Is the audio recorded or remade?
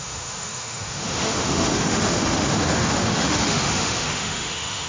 remade